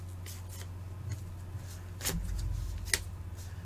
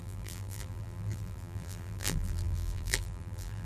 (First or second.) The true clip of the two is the first